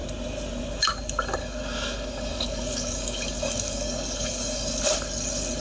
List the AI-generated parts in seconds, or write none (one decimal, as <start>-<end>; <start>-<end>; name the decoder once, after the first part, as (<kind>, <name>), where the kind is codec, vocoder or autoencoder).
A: 1.4-4.8 (codec, DAC)